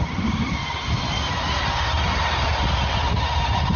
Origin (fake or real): real